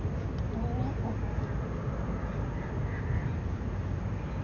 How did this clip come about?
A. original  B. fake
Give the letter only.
A